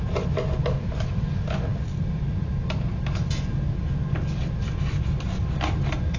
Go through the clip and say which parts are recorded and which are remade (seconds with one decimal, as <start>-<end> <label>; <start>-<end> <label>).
0.0-6.2 recorded